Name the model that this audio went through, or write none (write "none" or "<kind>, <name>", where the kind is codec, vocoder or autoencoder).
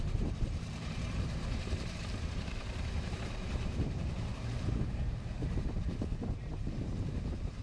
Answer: vocoder, BigVGAN v2